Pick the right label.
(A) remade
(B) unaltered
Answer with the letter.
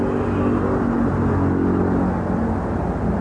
B